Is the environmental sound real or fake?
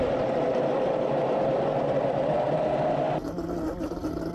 real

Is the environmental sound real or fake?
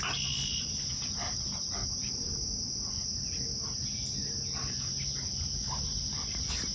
real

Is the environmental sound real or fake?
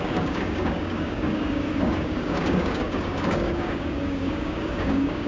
fake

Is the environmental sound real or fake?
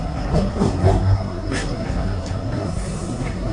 fake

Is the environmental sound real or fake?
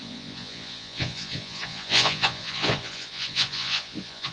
fake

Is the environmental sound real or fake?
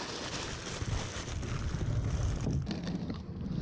real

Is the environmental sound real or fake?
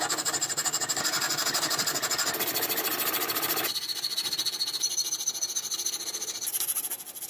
real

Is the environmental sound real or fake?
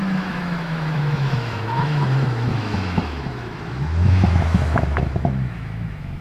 fake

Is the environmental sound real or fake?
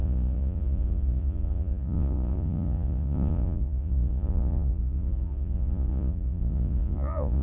fake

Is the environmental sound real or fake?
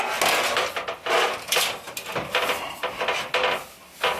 real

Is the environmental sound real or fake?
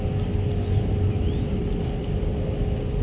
real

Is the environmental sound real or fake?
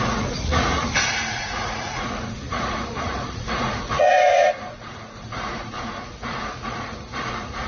fake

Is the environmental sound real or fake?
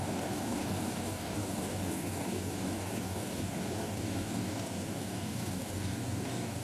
fake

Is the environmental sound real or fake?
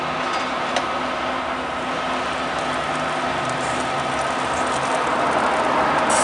real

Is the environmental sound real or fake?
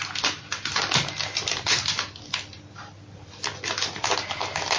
real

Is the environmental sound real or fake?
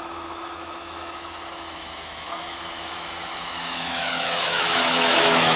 fake